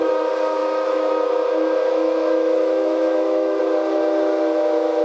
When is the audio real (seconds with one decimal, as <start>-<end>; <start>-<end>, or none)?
0.0-0.6; 3.6-5.0